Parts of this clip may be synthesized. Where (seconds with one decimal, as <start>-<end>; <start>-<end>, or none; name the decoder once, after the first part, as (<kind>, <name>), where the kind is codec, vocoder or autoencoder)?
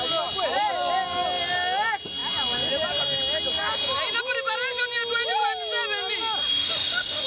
6.5-7.3 (autoencoder, DAC-VAE)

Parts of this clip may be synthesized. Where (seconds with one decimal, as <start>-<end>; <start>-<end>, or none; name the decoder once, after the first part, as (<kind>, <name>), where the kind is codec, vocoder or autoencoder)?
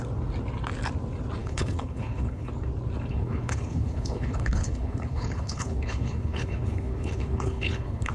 1.4-2.5 (codec, HILCodec); 3.1-8.1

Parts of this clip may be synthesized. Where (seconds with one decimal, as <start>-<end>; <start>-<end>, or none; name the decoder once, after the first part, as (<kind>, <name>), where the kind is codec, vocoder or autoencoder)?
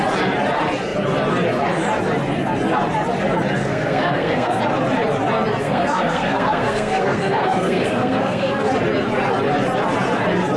3.6-4.6 (codec, SNAC); 5.6-8.7